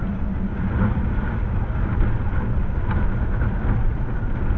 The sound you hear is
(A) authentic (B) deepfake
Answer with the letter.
A